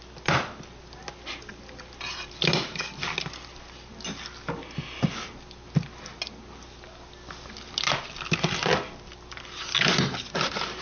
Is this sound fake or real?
real